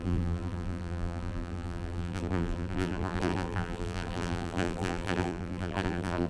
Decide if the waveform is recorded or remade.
remade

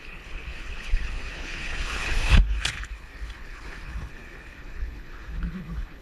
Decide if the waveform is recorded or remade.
remade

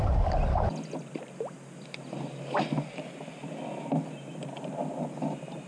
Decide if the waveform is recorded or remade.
recorded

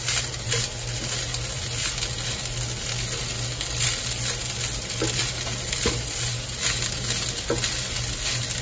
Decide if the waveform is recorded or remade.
recorded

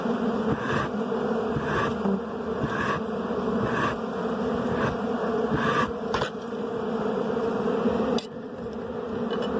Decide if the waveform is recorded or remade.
recorded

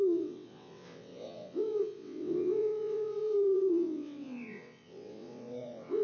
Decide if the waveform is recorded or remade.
remade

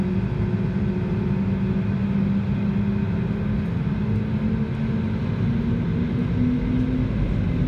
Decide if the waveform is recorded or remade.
recorded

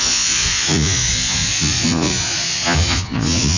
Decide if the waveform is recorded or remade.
remade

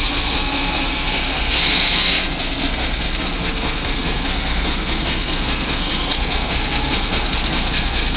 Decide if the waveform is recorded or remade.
remade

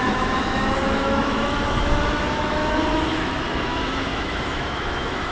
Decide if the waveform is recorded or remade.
remade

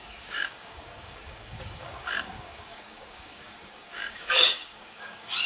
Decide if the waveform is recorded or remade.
remade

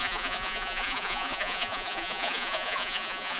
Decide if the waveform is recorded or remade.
remade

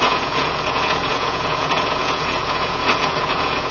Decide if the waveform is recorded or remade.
remade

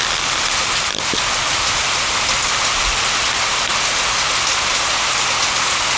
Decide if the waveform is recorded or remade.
recorded